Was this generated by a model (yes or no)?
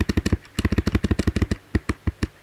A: no